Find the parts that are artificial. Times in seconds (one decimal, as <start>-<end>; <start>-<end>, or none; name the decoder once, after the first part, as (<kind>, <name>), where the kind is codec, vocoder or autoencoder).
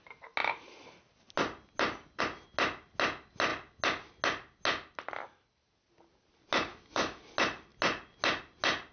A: 6.7-7.2 (autoencoder, DAC-VAE)